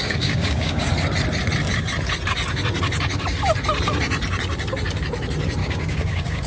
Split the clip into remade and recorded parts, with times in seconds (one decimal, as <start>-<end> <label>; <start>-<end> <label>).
0.0-0.9 remade; 0.9-5.6 recorded; 5.6-6.5 remade